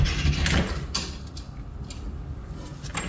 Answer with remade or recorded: recorded